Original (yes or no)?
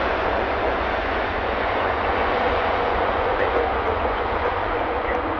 no